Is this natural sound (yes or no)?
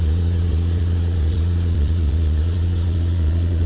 no